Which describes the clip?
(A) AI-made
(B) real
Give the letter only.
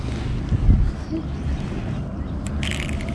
B